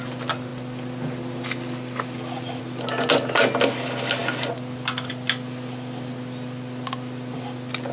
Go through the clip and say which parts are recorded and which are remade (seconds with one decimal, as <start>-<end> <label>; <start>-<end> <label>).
0.0-7.9 recorded